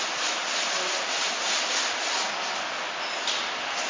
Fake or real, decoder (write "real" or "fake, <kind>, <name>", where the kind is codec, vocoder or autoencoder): real